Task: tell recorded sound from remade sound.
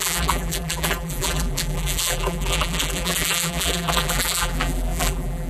remade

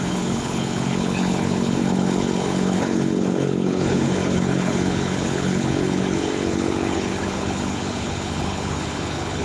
remade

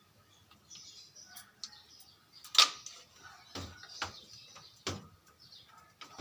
recorded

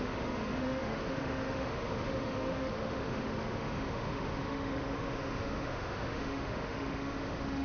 remade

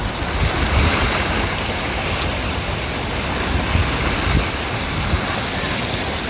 recorded